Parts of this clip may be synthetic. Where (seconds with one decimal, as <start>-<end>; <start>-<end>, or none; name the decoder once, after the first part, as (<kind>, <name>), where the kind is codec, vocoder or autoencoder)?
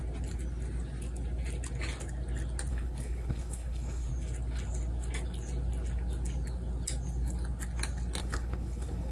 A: 2.7-4.1 (codec, HILCodec); 8.2-9.1